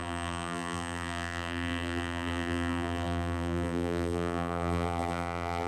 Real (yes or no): no